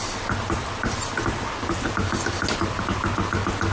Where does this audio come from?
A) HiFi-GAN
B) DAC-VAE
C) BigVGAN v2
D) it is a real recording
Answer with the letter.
D